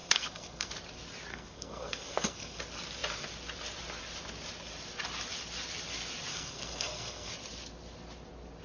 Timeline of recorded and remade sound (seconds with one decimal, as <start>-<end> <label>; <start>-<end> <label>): 0.0-0.7 remade; 0.7-1.3 recorded; 1.3-2.6 remade; 2.6-6.3 recorded; 6.3-7.3 remade; 7.3-8.6 recorded

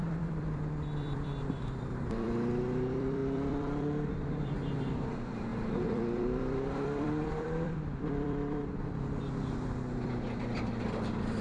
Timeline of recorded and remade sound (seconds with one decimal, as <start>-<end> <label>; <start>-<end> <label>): 0.0-8.6 remade; 8.6-10.1 recorded; 10.1-11.4 remade

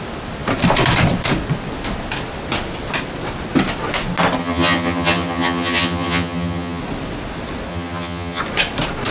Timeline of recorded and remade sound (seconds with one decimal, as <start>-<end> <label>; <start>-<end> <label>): 0.0-4.4 recorded; 4.4-6.8 remade; 6.8-7.7 recorded; 7.7-8.4 remade; 8.4-9.1 recorded

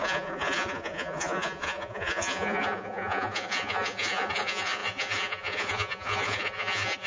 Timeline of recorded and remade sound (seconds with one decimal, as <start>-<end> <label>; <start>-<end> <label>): 0.0-7.1 remade